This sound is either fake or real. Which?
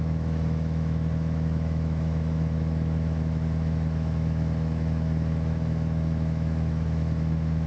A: fake